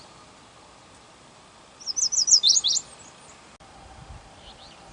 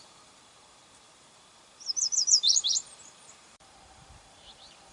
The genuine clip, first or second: first